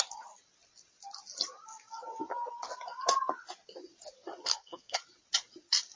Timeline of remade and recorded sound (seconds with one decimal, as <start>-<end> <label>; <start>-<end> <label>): 0.0-4.5 recorded; 4.5-5.0 remade; 5.0-6.0 recorded